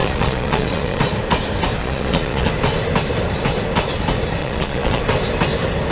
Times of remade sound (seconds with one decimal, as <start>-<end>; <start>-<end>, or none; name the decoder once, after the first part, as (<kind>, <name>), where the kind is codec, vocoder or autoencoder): 0.0-1.0 (vocoder, Vocos); 1.8-2.5; 4.4-5.0